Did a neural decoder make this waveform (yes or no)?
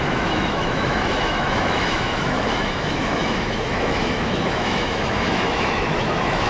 yes